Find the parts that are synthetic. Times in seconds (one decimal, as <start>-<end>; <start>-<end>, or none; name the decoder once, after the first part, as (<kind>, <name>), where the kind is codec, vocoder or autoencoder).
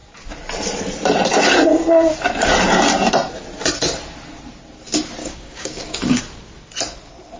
5.2-6.2 (codec, DAC)